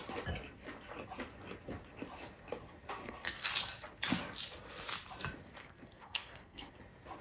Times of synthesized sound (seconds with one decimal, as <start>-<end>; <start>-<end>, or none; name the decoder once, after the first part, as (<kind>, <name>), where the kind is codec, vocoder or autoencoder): 3.0-3.5 (codec, SNAC); 5.6-6.7

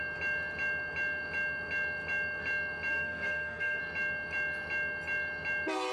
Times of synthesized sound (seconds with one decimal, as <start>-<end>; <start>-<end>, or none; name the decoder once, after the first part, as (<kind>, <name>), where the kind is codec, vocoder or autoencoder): 2.9-3.8 (codec, SNAC)

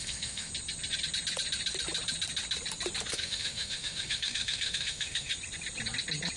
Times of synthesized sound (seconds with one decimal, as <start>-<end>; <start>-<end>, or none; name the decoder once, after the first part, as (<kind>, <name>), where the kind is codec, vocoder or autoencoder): 0.0-0.5 (autoencoder, DAC-VAE); 3.1-5.3

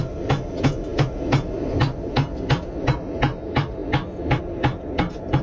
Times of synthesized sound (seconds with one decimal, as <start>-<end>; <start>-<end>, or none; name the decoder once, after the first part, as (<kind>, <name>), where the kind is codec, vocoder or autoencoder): none

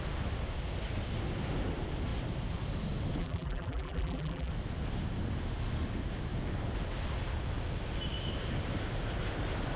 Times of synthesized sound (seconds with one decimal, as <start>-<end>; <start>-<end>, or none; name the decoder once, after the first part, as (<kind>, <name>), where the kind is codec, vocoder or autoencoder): 3.2-4.5 (vocoder, BigVGAN v2)

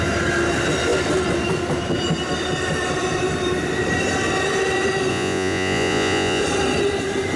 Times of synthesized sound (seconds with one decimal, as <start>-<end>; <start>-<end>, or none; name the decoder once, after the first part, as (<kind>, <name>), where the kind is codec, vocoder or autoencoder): 5.1-6.4 (vocoder, Vocos)

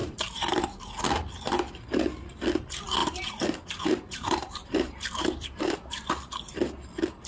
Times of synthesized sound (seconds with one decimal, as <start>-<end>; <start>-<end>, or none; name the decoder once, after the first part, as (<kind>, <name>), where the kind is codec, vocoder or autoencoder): 0.0-0.8 (vocoder, BigVGAN v2); 3.0-6.1